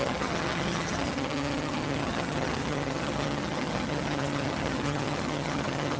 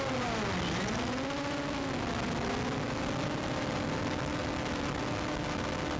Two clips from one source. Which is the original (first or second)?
second